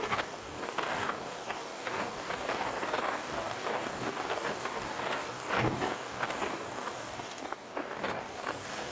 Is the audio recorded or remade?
remade